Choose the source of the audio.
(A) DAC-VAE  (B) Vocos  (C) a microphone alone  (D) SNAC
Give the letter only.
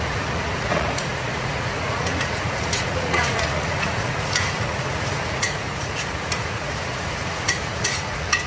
B